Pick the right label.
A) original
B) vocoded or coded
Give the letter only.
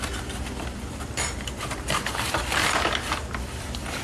B